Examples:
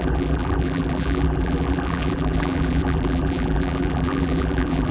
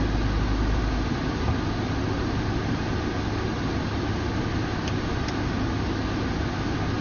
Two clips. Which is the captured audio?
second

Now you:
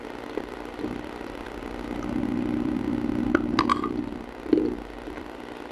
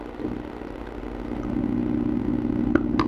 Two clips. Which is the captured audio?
second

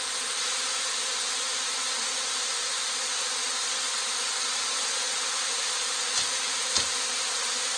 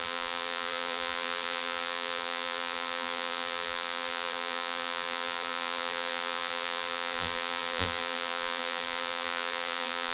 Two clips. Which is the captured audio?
first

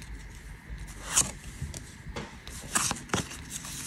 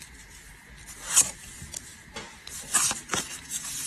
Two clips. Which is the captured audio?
first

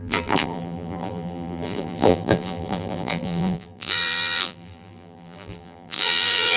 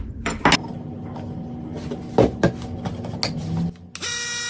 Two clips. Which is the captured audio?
second